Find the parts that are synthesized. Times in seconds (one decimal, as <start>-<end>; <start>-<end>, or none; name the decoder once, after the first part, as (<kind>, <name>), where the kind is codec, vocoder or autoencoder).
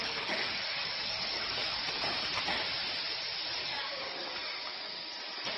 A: 0.0-1.8 (codec, DAC); 3.6-5.1